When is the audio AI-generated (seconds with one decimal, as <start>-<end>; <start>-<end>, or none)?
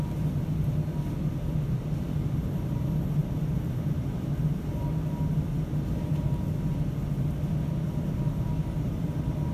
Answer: 3.2-4.3